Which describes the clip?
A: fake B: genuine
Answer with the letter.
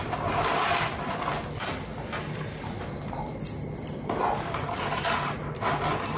B